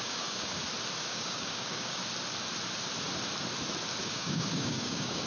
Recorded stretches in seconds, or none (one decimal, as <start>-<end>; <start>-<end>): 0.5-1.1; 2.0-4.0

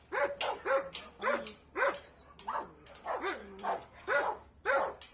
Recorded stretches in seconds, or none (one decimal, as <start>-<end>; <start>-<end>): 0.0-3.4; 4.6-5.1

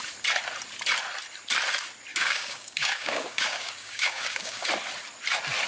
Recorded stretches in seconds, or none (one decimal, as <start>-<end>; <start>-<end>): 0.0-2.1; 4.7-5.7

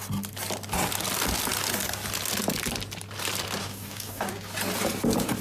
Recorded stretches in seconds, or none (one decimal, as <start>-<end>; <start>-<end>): 0.0-3.6; 4.3-5.4